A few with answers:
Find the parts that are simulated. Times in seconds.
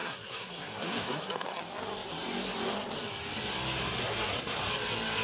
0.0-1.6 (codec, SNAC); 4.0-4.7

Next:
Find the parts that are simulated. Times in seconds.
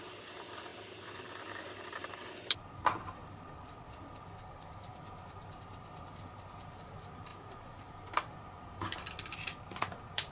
none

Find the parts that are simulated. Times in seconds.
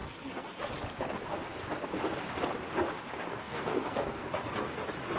0.0-0.6 (codec, SNAC); 3.2-4.8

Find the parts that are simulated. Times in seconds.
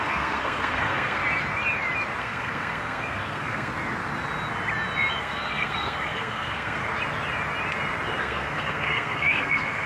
0.0-1.2 (codec, SNAC); 2.2-3.7; 5.2-6.8; 8.2-9.9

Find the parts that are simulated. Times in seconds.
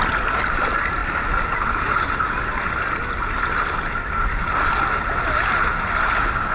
none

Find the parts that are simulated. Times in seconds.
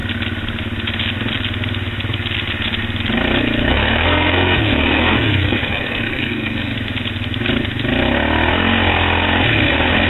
3.7-6.7 (codec, SNAC)